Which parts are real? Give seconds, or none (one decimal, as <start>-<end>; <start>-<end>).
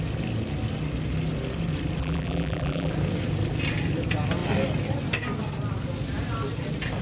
0.0-2.0; 2.9-7.0